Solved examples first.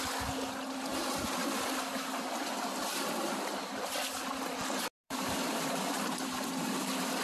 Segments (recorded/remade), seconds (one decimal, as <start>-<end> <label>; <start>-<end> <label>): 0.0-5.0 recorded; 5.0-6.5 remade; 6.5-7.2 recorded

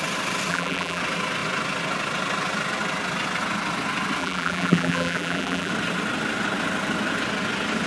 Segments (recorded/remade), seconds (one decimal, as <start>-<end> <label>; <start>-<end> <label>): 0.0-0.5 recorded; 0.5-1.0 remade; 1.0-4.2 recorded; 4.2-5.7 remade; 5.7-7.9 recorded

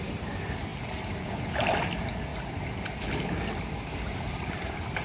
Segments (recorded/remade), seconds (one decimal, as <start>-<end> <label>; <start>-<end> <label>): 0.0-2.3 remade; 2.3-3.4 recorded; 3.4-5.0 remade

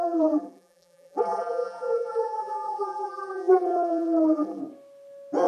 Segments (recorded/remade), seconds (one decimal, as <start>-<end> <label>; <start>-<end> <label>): 0.0-4.6 remade; 4.6-5.5 recorded

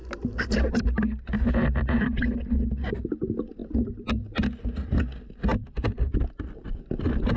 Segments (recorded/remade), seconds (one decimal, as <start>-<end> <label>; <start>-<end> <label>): 0.0-5.6 recorded; 5.6-6.9 remade; 6.9-7.4 recorded

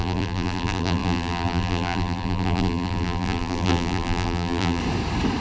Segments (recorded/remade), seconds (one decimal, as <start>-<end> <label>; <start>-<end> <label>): 0.0-4.8 remade; 4.8-5.4 recorded